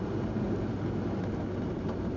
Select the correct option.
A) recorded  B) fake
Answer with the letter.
A